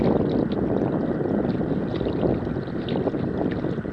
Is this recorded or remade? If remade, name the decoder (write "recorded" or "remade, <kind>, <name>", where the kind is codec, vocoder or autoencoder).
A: recorded